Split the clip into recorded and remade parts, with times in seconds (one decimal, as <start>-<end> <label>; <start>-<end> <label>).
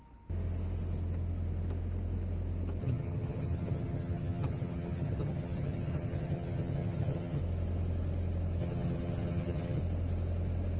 0.0-2.8 recorded; 2.8-7.4 remade; 7.4-8.6 recorded; 8.6-9.8 remade; 9.8-10.8 recorded